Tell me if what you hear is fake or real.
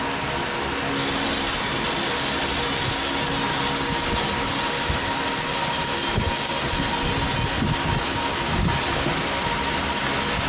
real